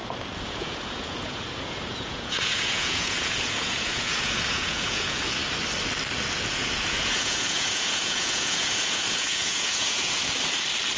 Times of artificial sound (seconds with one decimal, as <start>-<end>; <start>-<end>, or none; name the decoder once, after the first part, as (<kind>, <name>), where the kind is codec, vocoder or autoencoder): 0.0-5.4 (vocoder, Vocos); 6.5-10.2